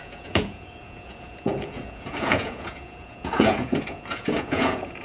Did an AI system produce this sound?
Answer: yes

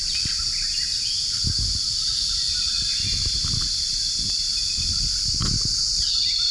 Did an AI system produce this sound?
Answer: no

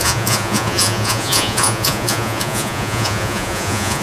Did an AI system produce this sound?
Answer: yes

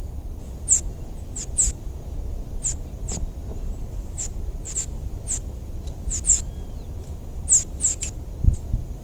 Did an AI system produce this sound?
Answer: no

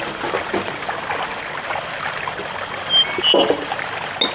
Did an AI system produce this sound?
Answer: no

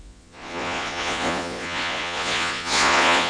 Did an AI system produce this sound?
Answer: yes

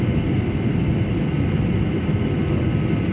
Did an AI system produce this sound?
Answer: no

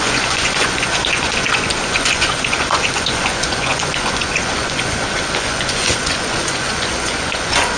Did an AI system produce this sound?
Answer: yes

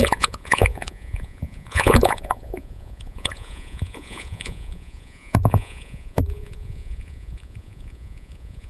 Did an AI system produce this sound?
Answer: yes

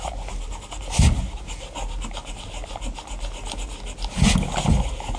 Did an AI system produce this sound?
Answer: no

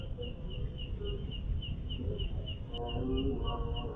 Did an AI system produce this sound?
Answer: no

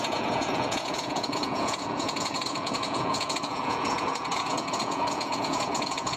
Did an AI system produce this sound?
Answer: yes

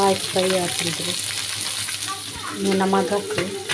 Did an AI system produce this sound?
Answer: no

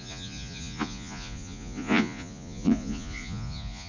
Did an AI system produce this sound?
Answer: yes